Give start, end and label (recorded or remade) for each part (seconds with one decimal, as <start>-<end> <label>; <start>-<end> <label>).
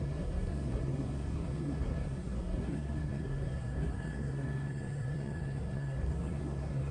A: 0.0-6.9 remade